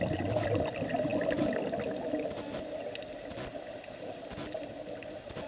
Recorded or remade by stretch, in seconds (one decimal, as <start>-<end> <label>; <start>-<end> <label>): 0.0-5.5 remade